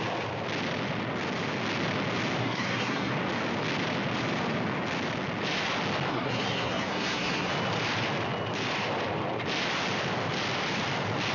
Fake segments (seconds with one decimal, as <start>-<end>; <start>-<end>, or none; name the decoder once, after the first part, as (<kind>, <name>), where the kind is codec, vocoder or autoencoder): 2.4-3.1 (codec, SNAC); 6.1-7.5